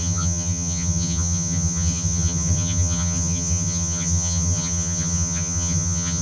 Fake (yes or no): yes